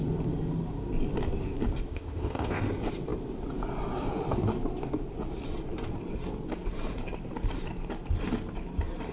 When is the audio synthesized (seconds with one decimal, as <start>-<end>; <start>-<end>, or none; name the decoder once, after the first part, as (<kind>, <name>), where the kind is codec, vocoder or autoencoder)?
1.9-2.6 (codec, ZipCodec)